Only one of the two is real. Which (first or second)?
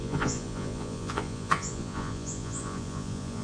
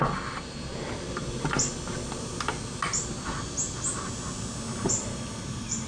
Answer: second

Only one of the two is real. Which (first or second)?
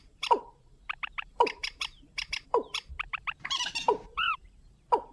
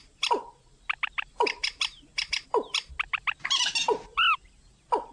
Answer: second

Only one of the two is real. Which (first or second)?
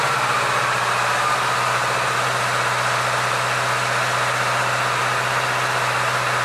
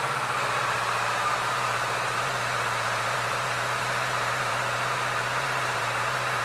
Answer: first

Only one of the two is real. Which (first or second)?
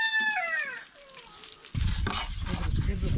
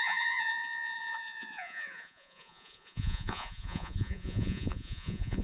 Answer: first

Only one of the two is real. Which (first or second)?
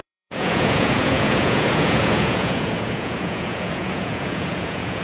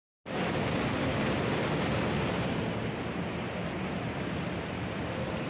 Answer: second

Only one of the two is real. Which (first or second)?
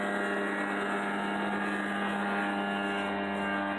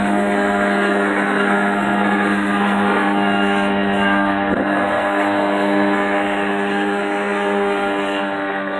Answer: first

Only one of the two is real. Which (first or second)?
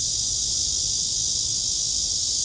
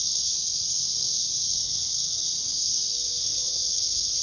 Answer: first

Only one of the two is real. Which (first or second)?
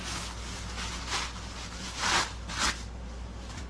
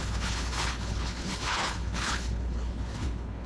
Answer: first